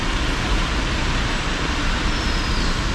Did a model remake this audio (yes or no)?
no